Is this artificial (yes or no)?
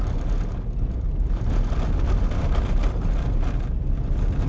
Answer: no